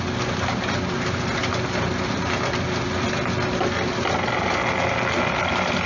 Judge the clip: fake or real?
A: real